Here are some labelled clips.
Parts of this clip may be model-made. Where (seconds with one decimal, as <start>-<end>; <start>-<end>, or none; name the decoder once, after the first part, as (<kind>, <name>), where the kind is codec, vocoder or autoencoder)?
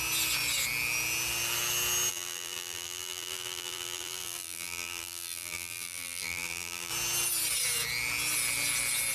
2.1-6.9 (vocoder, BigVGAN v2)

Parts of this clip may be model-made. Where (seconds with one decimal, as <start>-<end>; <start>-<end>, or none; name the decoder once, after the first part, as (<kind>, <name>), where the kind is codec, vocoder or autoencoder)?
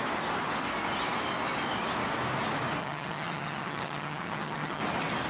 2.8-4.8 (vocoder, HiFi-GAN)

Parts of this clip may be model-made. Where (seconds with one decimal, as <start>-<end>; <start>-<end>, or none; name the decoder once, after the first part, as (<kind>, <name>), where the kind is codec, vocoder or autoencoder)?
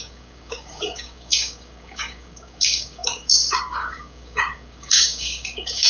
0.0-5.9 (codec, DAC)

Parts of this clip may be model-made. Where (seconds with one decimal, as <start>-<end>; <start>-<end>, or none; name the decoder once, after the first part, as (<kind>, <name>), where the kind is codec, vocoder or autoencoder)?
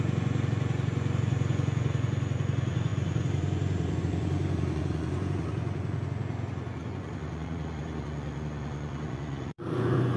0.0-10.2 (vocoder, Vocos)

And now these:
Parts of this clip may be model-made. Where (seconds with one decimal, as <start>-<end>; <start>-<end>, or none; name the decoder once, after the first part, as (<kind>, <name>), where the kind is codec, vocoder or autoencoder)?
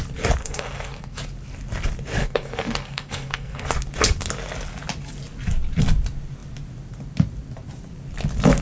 0.4-1.2 (codec, SNAC); 2.2-3.7